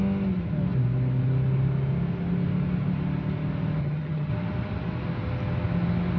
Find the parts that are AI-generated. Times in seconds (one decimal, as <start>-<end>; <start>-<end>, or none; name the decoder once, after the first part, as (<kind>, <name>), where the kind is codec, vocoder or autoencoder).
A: 3.8-4.3 (vocoder, HiFi-GAN)